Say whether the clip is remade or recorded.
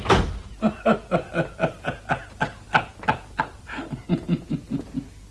recorded